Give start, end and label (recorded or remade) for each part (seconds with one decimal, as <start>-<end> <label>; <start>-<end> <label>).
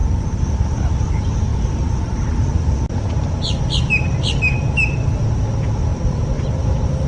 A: 0.0-7.1 recorded